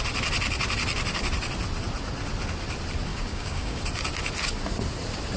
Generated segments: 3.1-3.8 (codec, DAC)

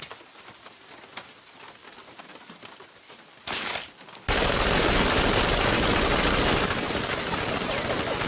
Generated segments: 1.8-6.8 (vocoder, BigVGAN v2)

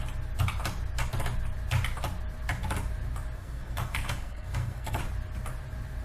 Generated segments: 3.4-5.0 (codec, SNAC)

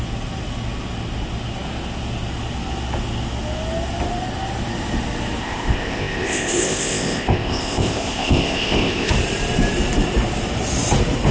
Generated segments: 5.4-9.1 (codec, ZipCodec)

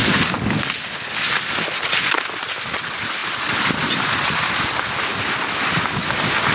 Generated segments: none

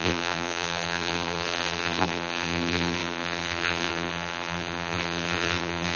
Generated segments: 0.0-6.0 (vocoder, BigVGAN v2)

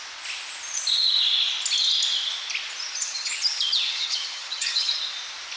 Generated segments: 2.9-4.9 (vocoder, HiFi-GAN)